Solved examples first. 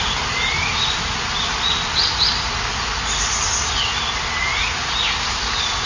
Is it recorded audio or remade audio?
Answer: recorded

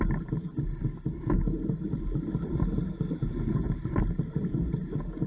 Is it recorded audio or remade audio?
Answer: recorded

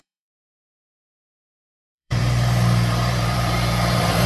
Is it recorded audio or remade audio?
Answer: remade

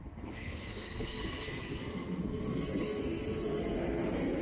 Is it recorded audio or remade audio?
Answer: remade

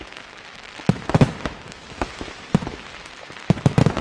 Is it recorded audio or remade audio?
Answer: remade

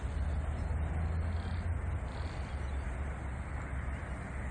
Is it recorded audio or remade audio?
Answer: recorded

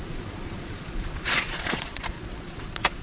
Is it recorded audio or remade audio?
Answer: remade